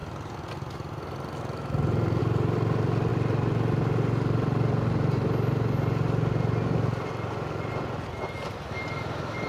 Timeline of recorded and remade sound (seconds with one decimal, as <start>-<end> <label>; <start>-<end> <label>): 0.0-9.5 recorded